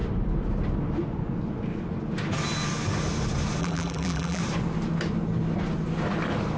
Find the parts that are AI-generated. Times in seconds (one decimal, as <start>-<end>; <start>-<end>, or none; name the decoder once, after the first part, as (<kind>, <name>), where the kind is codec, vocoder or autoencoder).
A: 3.6-4.4 (vocoder, BigVGAN v2)